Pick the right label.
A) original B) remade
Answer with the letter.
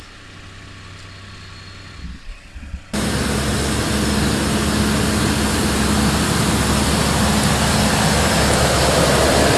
A